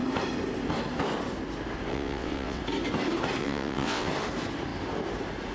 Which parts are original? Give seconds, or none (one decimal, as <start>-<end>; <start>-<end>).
0.0-1.9; 2.6-3.4; 4.1-5.5